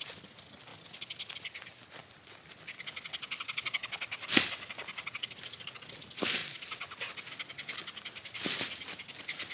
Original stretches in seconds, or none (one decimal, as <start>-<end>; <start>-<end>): 0.7-1.3; 2.0-5.7; 6.4-7.3